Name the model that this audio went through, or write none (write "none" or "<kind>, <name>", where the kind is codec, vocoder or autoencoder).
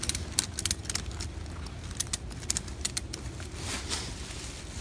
none